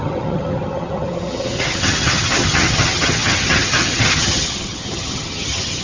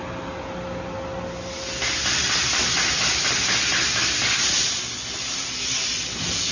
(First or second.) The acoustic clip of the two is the second